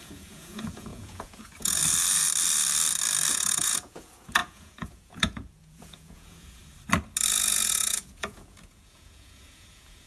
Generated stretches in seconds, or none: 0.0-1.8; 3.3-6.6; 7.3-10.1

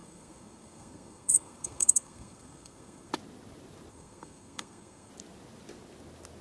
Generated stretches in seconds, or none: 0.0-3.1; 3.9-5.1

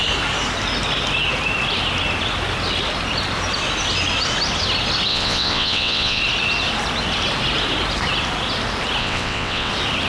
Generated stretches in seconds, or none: 5.1-6.2; 9.0-9.7